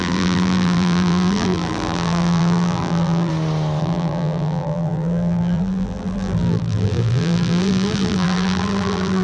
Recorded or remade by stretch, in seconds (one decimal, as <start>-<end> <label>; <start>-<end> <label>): 0.0-3.3 remade; 3.3-3.8 recorded; 3.8-9.2 remade